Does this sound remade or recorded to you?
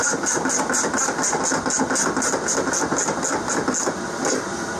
recorded